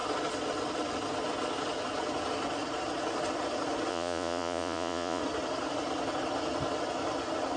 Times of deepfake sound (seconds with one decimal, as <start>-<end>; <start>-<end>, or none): 3.9-5.2